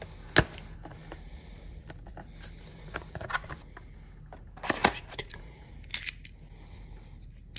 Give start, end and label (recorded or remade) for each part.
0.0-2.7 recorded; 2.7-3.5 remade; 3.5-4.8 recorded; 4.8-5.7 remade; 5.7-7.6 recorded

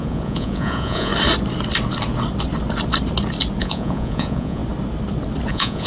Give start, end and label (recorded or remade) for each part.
0.0-1.1 remade; 1.1-3.6 recorded; 3.6-4.6 remade; 4.6-5.5 recorded; 5.5-5.9 remade

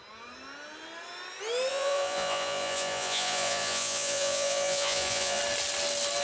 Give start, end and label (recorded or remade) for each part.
0.0-1.7 recorded; 1.7-5.4 remade; 5.4-6.2 recorded

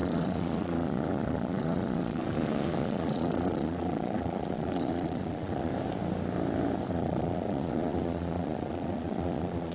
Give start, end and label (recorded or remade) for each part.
0.0-5.7 remade; 5.7-6.9 recorded; 6.9-9.7 remade

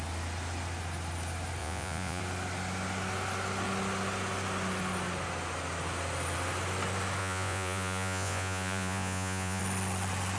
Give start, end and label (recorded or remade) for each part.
0.0-1.6 recorded; 1.6-2.2 remade; 2.2-7.2 recorded; 7.2-9.6 remade; 9.6-10.4 recorded

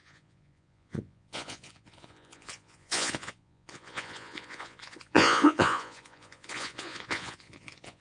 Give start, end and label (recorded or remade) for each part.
0.0-8.0 remade